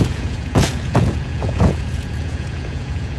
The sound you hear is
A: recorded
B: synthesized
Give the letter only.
B